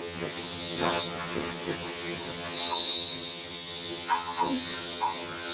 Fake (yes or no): yes